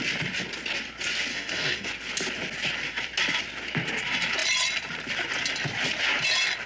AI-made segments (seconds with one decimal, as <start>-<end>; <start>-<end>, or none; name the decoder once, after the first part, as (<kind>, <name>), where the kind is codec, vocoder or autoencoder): 1.3-1.9 (codec, SNAC)